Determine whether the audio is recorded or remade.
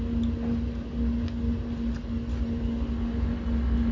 recorded